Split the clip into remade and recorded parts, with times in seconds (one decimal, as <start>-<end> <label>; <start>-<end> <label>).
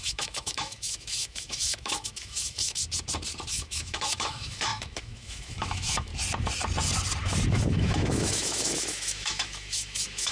0.0-2.8 remade; 2.8-3.5 recorded; 3.5-6.1 remade; 6.1-7.5 recorded; 7.5-10.3 remade